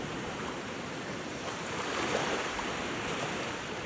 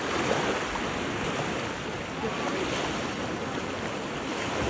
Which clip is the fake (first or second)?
first